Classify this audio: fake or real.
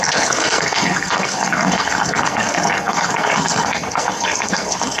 fake